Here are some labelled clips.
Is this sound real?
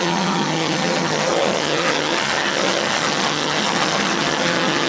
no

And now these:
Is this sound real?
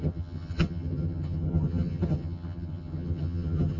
no